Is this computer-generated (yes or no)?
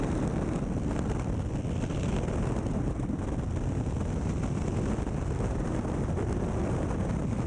no